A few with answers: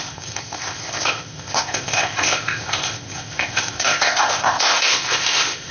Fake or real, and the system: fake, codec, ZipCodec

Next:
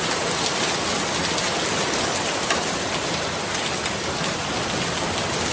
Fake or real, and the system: real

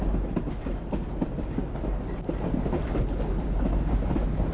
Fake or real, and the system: real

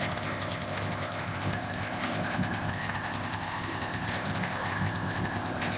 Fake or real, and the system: fake, codec, ZipCodec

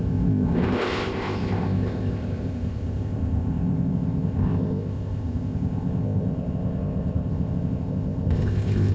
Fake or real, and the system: fake, codec, ZipCodec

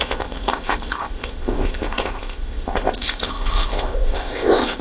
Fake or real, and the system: fake, codec, ZipCodec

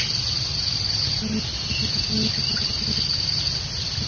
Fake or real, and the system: real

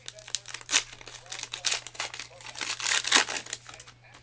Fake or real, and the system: real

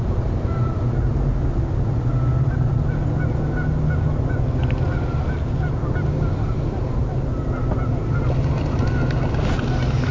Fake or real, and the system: real